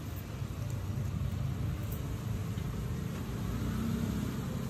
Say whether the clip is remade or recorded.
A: recorded